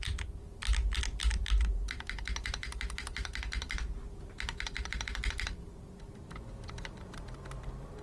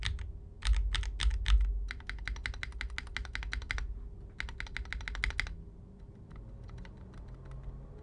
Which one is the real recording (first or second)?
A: second